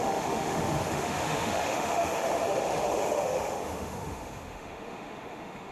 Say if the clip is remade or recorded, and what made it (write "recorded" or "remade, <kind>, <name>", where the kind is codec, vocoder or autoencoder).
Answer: remade, autoencoder, DAC-VAE